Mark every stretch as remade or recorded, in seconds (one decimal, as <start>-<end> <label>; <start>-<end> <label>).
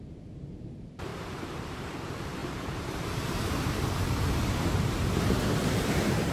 0.0-1.1 remade; 1.1-1.8 recorded; 1.8-6.3 remade